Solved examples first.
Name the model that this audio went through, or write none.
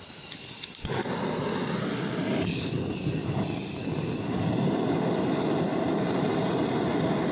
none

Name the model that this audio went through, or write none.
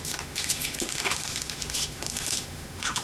autoencoder, DAC-VAE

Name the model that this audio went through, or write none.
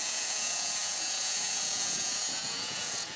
vocoder, Vocos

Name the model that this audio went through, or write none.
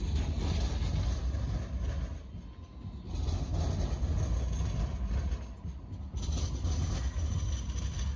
none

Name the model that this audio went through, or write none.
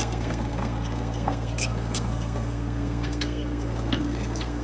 codec, SNAC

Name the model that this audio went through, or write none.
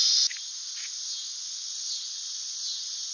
none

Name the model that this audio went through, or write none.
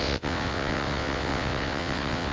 vocoder, WaveNeXt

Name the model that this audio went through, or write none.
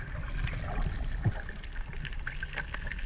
none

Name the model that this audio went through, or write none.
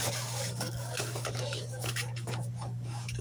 codec, DAC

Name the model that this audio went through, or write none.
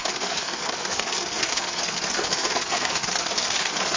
codec, SNAC